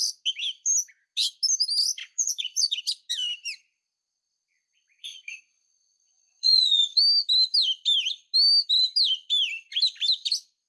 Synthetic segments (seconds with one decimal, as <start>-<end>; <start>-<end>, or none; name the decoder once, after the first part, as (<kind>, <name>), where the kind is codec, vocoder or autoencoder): 2.0-2.8 (vocoder, Vocos); 5.1-7.0